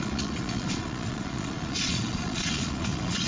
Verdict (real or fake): fake